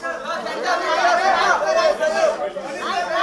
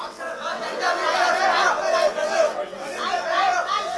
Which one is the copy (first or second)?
second